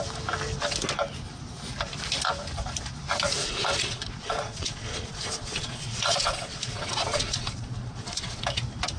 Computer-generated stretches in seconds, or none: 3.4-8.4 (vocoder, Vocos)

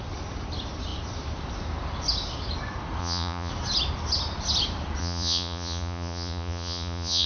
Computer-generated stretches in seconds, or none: 3.0-3.5 (vocoder, Vocos); 5.0-7.3